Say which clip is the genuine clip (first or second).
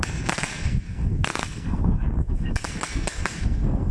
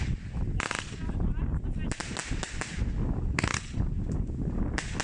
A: second